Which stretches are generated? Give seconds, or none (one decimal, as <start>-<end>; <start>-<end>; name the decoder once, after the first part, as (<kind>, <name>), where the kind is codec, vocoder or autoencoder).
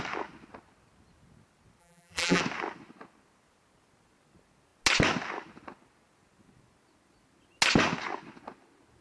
1.8-2.4 (vocoder, BigVGAN v2)